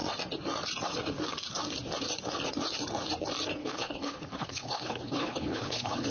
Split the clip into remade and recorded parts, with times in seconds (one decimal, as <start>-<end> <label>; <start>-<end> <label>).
0.0-3.6 recorded; 3.6-6.1 remade